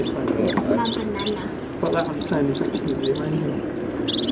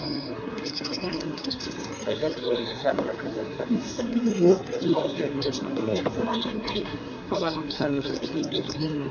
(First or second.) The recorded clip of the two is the first